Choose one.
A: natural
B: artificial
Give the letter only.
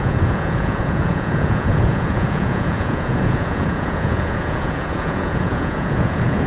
B